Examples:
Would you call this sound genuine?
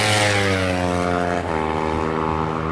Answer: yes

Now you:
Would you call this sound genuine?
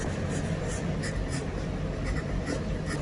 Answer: yes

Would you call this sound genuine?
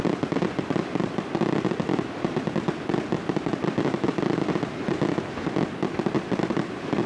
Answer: no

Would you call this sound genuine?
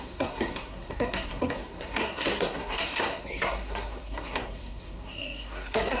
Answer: no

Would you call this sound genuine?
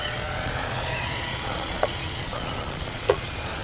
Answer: no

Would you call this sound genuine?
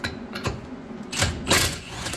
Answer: no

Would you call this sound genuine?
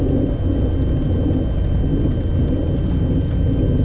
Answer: yes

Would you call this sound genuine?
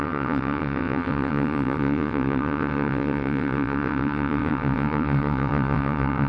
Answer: no